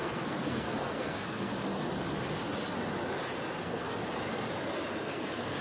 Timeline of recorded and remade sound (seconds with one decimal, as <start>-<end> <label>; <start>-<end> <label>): 0.0-1.5 remade; 1.5-3.6 recorded; 3.6-4.0 remade; 4.0-5.0 recorded; 5.0-5.6 remade